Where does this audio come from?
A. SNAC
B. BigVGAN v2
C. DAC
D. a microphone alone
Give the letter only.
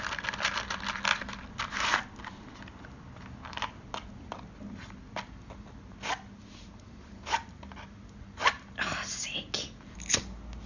D